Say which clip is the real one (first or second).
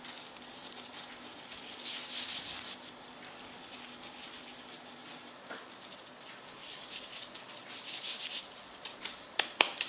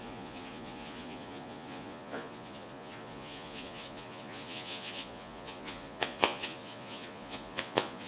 first